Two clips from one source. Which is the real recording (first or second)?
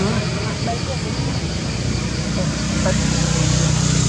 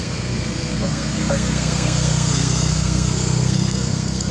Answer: first